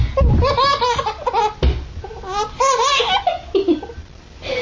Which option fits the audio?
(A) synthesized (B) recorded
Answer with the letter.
B